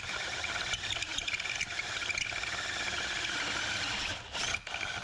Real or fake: real